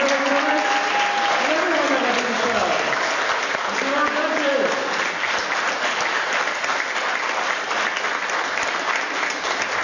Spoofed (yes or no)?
no